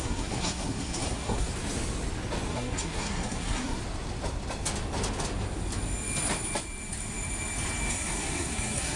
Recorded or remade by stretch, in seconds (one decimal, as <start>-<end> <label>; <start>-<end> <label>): 0.0-1.5 remade; 1.5-2.5 recorded; 2.5-3.8 remade; 3.8-7.9 recorded; 7.9-9.0 remade